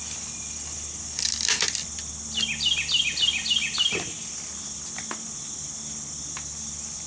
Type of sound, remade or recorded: recorded